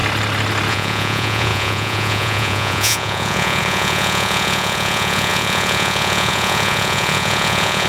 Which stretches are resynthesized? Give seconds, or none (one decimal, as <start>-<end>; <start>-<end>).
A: 0.7-7.9